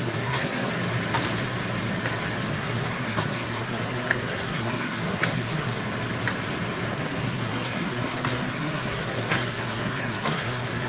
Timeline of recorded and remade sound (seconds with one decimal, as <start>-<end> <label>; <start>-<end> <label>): 0.0-0.7 remade; 0.7-2.5 recorded; 2.5-5.8 remade; 5.8-6.9 recorded; 6.9-10.9 remade